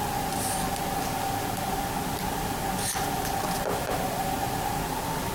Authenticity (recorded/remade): recorded